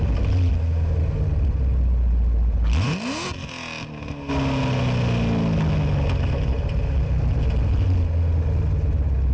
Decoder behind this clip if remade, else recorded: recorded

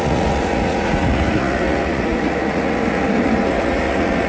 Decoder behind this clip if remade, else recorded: remade, vocoder, Vocos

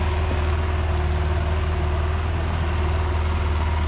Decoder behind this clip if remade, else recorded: recorded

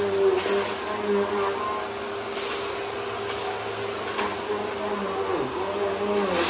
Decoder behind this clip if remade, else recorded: recorded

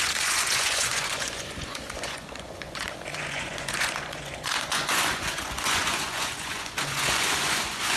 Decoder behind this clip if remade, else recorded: remade, vocoder, Vocos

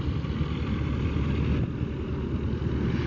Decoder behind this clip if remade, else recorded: recorded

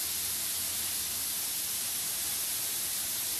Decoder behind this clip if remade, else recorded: recorded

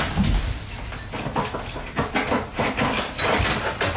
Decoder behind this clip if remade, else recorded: recorded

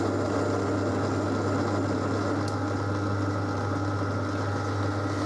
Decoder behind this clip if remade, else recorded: recorded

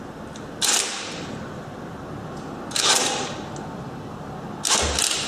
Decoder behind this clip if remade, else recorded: recorded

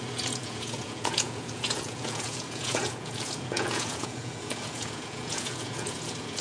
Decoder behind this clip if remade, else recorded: remade, vocoder, Vocos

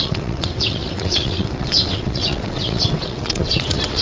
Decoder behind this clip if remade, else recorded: remade, vocoder, WaveNeXt